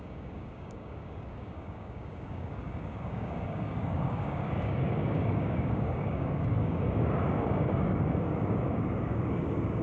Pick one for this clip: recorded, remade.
remade